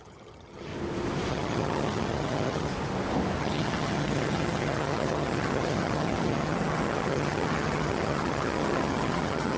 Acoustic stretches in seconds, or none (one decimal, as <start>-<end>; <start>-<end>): 0.7-1.3; 2.7-3.4

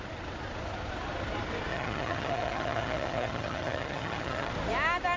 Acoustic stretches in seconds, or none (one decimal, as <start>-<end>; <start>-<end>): 0.0-1.7; 4.5-5.2